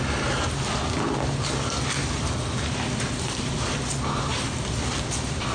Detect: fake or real real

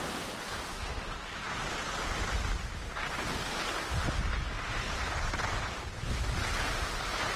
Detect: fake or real real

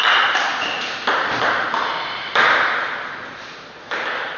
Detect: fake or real real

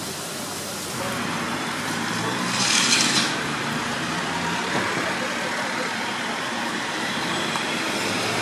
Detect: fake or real fake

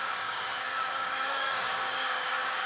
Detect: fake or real fake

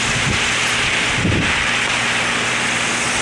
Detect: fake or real real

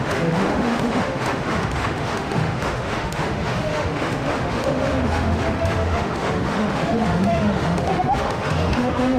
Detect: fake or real fake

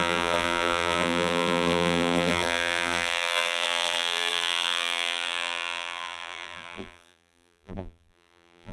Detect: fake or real fake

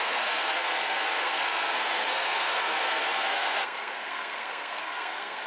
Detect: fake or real fake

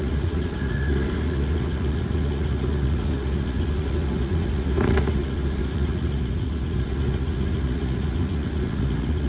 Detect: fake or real fake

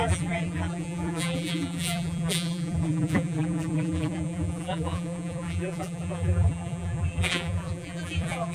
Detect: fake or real fake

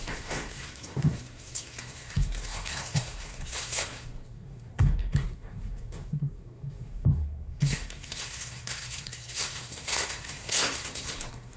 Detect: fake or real fake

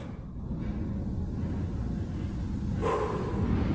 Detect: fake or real real